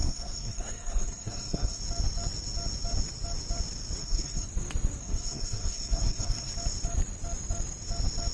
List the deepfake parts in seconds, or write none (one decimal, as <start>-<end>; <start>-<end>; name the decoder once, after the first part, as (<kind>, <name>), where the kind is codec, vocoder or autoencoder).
0.0-1.8 (codec, SNAC); 4.0-4.5; 5.0-6.5